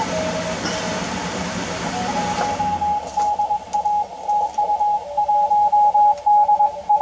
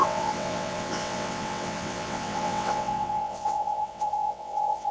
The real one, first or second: first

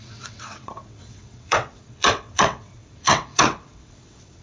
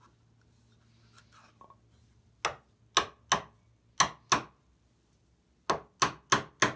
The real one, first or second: second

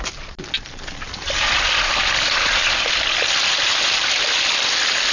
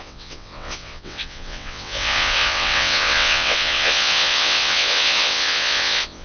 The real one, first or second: first